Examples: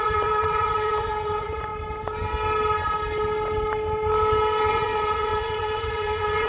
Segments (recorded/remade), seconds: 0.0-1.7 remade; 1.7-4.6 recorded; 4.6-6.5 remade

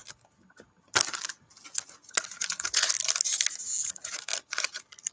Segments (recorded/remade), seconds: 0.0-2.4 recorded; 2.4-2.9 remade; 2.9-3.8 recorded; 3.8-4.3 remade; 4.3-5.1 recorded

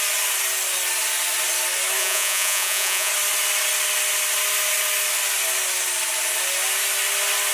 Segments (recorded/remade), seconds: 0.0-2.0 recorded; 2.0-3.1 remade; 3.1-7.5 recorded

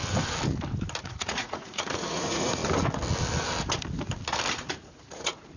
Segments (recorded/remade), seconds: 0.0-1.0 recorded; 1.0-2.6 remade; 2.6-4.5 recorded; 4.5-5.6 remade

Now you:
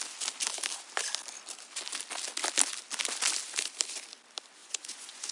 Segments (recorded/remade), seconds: 0.0-4.6 recorded; 4.6-5.3 remade

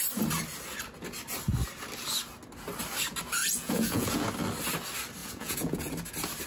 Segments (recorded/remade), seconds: 0.0-3.4 recorded; 3.4-4.3 remade; 4.3-5.2 recorded; 5.2-5.9 remade; 5.9-6.5 recorded

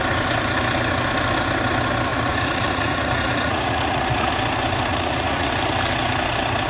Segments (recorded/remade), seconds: 0.0-2.1 recorded; 2.1-4.3 remade; 4.3-4.9 recorded; 4.9-5.5 remade; 5.5-6.7 recorded